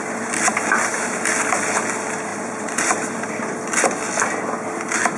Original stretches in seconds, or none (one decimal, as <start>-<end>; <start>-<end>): 0.0-2.3; 3.3-5.2